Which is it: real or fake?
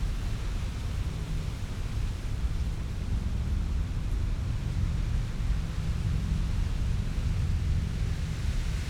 real